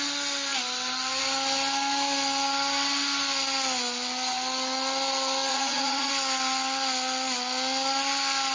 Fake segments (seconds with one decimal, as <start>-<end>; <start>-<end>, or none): 5.5-6.1